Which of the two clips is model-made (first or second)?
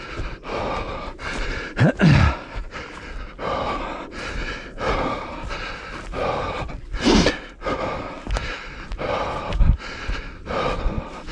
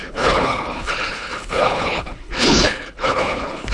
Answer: second